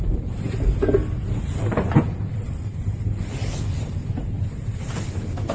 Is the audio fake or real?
real